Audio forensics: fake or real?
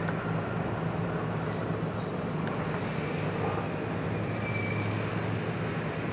real